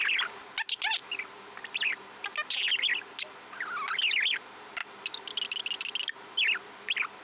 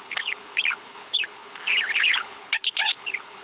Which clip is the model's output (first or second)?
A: second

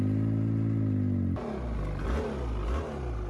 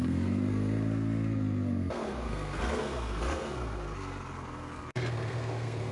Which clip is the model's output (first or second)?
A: second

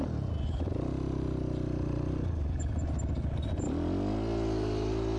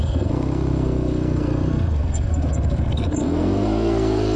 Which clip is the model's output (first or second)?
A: second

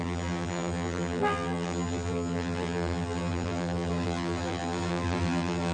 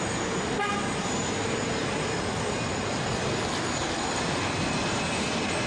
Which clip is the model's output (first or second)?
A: first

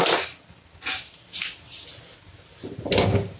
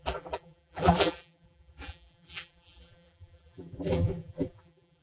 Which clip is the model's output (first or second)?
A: second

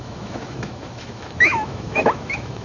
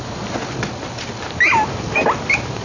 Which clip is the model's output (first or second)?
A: first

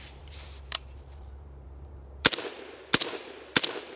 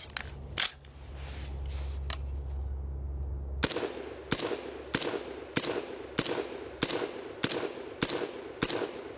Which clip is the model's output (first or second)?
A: first